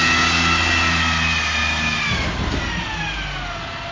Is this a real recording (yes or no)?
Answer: yes